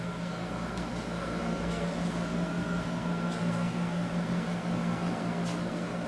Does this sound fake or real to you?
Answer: fake